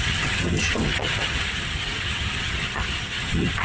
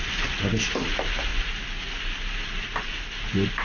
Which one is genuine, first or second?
second